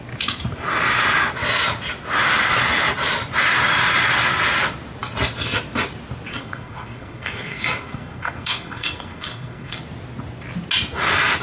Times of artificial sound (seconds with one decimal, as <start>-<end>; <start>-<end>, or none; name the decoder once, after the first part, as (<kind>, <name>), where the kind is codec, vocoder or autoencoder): 6.3-9.8 (codec, SNAC)